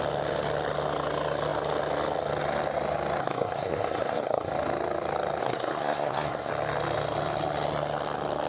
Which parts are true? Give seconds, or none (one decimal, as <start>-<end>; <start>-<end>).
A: 0.0-3.2; 4.5-5.4; 6.5-8.5